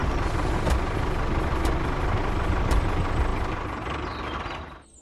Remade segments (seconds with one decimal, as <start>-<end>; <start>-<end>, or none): 0.0-2.2